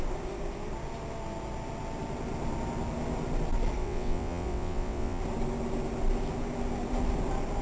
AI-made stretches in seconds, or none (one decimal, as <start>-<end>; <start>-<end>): 3.8-5.2